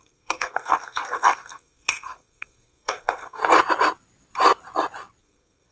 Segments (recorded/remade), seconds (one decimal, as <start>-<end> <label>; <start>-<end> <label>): 0.0-3.4 remade; 3.4-5.2 recorded; 5.2-5.7 remade